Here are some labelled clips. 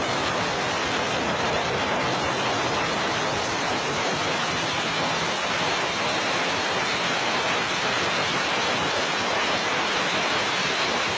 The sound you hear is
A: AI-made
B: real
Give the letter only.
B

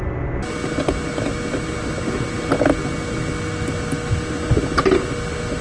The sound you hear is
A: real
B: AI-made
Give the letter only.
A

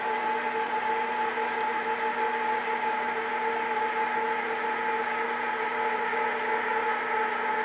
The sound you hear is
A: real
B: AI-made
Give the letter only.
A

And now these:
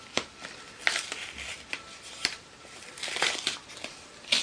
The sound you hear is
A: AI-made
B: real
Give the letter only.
A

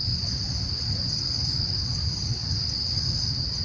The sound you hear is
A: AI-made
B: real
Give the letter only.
B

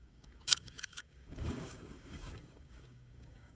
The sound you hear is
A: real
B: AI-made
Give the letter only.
B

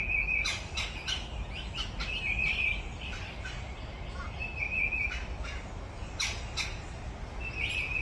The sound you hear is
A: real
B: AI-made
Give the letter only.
A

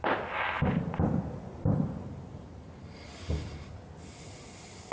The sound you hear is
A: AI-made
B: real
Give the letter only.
B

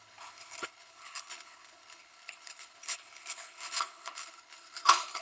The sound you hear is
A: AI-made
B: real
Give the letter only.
A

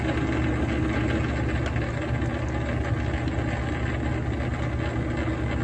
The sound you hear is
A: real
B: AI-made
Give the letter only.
A